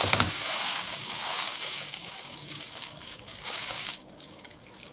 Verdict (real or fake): fake